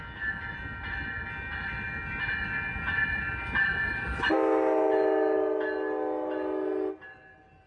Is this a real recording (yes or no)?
yes